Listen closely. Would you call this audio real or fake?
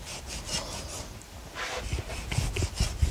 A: real